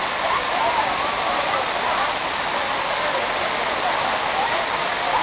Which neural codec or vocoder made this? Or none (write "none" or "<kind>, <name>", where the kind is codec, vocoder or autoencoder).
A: none